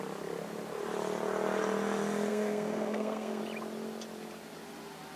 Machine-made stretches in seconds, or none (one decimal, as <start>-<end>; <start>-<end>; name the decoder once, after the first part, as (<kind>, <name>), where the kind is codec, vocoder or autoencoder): 2.3-3.4 (codec, SNAC)